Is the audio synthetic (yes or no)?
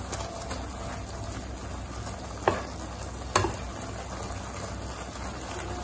no